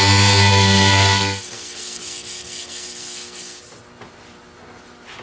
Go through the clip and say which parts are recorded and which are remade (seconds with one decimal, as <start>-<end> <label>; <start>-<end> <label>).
0.0-0.5 recorded; 0.5-3.6 remade; 3.6-5.2 recorded